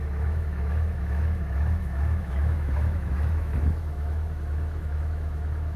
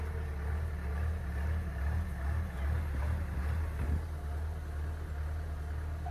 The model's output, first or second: first